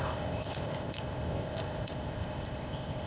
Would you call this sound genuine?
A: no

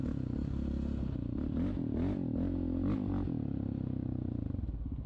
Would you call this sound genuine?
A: yes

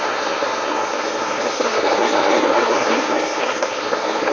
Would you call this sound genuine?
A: no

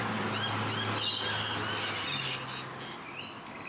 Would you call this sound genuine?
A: yes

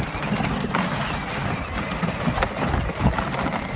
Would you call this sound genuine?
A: yes